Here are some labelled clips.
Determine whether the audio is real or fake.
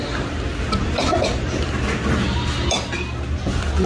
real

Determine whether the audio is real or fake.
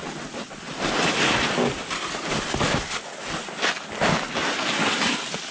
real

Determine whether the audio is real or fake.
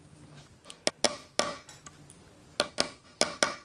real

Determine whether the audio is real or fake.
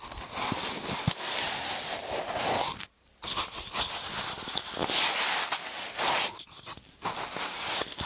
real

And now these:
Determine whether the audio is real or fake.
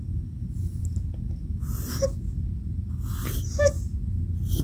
real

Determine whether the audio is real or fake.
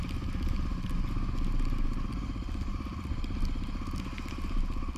real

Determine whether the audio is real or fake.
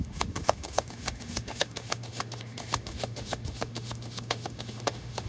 fake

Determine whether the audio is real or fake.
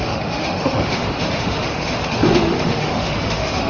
fake